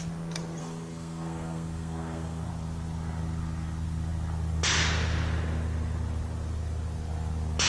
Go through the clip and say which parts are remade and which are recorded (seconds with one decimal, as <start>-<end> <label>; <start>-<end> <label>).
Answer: 0.0-0.6 recorded; 0.6-2.5 remade; 2.5-7.7 recorded